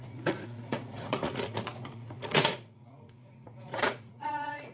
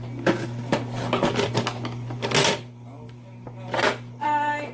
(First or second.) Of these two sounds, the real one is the second